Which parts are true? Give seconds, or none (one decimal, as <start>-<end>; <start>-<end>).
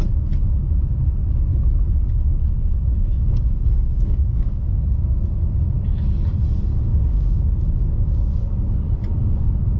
0.0-2.8; 4.7-6.9; 8.7-9.8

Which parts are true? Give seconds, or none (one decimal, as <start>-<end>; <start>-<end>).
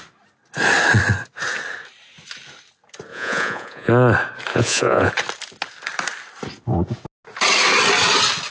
0.0-3.1; 3.9-4.5; 5.1-8.5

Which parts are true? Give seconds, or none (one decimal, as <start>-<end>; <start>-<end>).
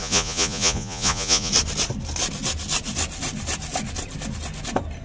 1.5-5.0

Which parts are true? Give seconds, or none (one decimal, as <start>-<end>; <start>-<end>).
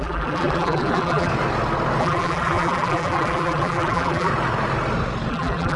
1.3-2.0; 4.3-5.3